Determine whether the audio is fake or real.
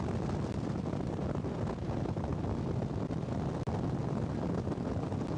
real